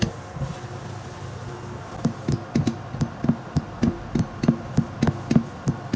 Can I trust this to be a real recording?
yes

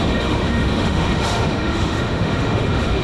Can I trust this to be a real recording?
no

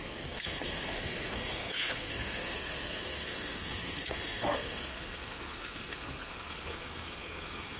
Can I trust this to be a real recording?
no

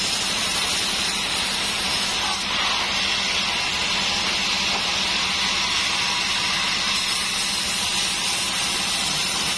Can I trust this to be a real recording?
yes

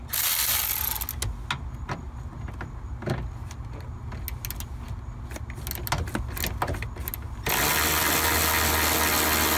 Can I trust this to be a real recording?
yes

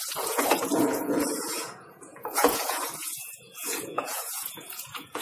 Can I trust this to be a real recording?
no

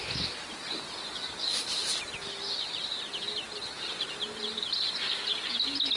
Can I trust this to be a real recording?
yes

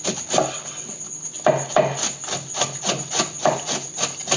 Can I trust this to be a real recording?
yes